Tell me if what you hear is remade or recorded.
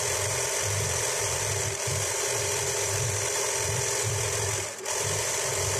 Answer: recorded